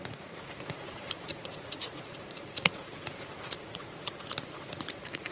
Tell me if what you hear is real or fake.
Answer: fake